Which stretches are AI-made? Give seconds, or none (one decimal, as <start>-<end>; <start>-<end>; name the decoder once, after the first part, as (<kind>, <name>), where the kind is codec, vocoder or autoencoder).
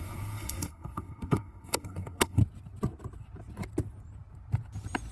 0.0-2.4 (codec, SNAC)